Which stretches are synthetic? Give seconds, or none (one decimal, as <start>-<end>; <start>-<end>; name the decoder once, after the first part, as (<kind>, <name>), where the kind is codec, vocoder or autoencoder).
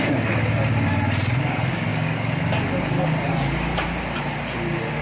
0.0-0.4 (codec, DAC); 1.4-3.7